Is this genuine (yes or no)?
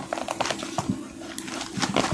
yes